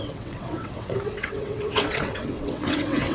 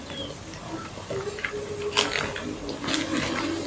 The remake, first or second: first